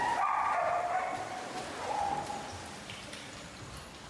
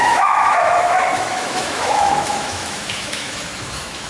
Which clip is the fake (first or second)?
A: second